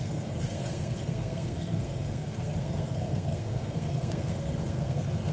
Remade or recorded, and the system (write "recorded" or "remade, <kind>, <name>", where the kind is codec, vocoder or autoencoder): remade, codec, SNAC